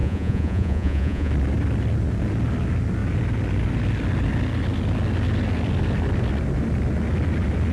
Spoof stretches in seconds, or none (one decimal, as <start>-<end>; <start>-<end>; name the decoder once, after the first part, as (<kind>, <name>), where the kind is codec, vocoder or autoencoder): 0.0-1.3 (vocoder, Vocos)